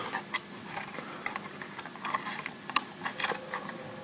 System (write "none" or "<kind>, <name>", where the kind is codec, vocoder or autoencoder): none